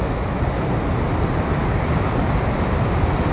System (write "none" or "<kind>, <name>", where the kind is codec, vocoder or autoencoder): none